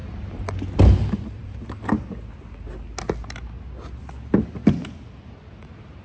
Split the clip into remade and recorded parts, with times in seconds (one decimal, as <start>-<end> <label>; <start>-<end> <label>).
0.0-1.4 recorded; 1.4-1.9 remade; 1.9-6.0 recorded